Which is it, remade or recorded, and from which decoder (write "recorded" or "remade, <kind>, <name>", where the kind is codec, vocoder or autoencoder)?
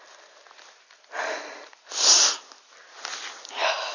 recorded